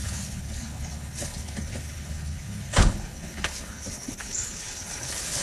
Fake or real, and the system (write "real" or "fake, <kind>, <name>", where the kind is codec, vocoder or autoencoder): fake, codec, HILCodec